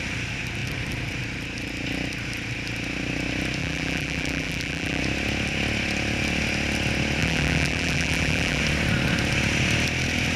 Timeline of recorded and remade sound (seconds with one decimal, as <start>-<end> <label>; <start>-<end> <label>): 0.0-3.6 recorded; 3.6-5.0 remade; 5.0-7.2 recorded; 7.2-8.6 remade; 8.6-10.4 recorded